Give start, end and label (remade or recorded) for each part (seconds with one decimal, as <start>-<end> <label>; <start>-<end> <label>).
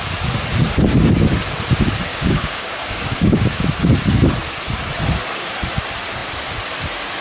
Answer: 0.0-2.1 recorded; 2.1-3.6 remade; 3.6-7.2 recorded